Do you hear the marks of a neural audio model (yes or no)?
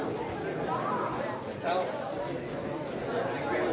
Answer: no